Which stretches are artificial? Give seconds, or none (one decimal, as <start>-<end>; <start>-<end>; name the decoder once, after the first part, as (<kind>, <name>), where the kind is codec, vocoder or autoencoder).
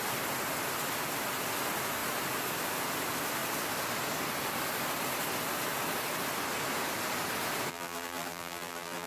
7.7-9.1 (vocoder, BigVGAN v2)